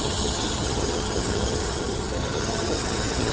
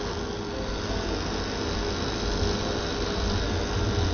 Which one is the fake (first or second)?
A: first